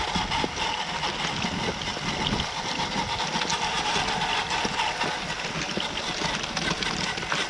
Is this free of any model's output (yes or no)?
yes